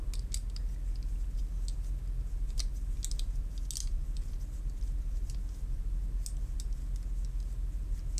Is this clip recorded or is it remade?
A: recorded